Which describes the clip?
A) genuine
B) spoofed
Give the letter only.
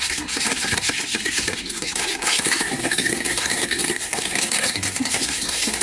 B